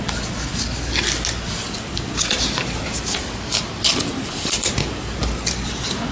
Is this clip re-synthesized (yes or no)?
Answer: no